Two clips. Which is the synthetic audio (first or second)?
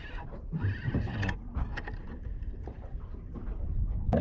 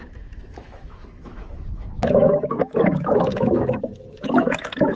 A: second